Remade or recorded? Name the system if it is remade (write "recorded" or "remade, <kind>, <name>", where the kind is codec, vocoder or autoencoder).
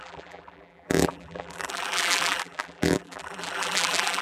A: remade, vocoder, BigVGAN v2